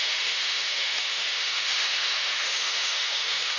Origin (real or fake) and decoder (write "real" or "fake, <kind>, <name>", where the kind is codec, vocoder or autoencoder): fake, autoencoder, DAC-VAE